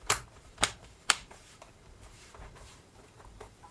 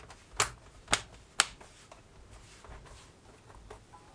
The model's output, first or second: first